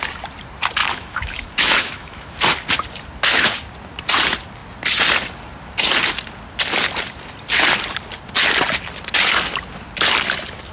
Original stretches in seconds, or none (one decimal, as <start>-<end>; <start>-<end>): 0.0-0.8; 2.3-10.7